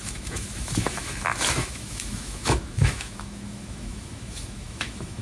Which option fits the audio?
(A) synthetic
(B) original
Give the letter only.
A